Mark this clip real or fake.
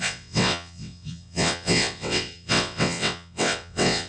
fake